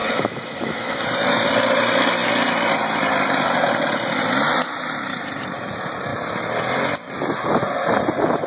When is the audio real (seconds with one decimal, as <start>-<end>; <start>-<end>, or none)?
1.0-8.5

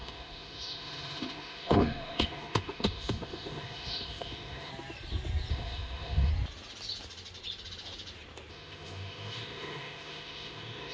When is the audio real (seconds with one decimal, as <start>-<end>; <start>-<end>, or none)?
4.7-5.5; 6.3-8.5